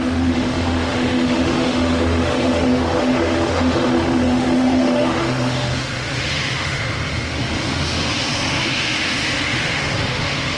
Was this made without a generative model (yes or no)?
no